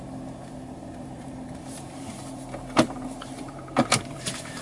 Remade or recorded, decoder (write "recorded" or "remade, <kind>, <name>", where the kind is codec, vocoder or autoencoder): remade, vocoder, BigVGAN v2